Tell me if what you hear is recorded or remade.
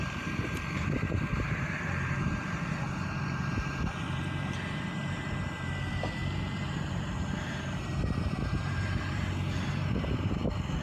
remade